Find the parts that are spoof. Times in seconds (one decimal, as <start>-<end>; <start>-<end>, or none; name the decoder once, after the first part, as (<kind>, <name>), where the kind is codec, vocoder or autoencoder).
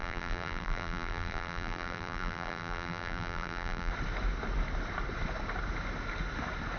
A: 0.0-3.9 (vocoder, BigVGAN v2)